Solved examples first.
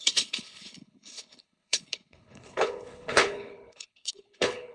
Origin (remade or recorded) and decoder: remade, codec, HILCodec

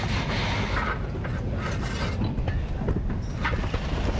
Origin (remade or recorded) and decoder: recorded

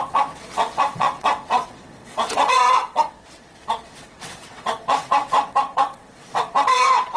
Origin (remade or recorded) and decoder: remade, vocoder, WaveNeXt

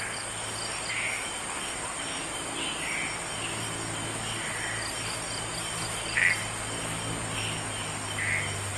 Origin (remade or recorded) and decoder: recorded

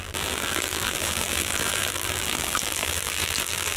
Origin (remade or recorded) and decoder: remade, vocoder, BigVGAN v2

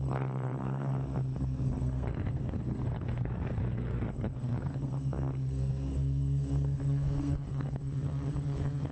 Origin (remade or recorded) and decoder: remade, codec, SNAC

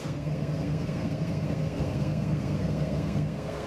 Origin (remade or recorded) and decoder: remade, codec, SNAC